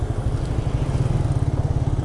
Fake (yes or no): no